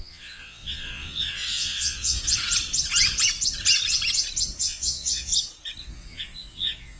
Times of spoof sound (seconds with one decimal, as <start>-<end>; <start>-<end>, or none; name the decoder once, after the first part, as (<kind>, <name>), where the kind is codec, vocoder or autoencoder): 0.0-2.2 (vocoder, Vocos); 4.6-5.3; 5.8-7.0